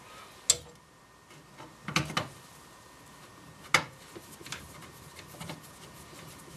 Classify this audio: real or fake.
real